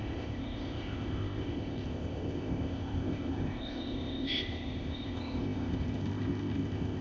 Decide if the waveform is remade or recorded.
remade